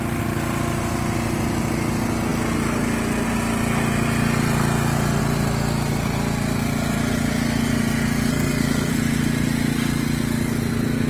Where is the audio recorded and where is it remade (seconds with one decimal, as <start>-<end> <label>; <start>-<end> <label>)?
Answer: 0.0-8.3 recorded; 8.3-8.9 remade; 8.9-11.1 recorded